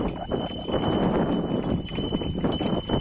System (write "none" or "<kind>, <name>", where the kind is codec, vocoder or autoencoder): vocoder, BigVGAN v2